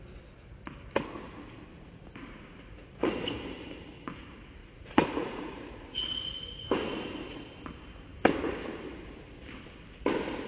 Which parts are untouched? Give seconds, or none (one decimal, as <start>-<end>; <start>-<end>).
0.0-1.7; 3.1-4.6; 6.3-10.5